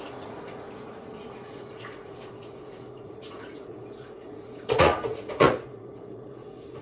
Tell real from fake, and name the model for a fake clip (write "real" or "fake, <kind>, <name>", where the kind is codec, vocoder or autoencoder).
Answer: fake, vocoder, Vocos